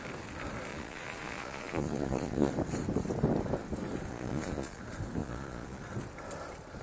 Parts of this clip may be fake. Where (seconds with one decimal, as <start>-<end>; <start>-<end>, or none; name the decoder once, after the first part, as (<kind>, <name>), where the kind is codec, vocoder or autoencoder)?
0.7-2.5 (vocoder, Vocos); 4.1-4.8; 5.2-5.8